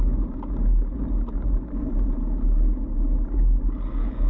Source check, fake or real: real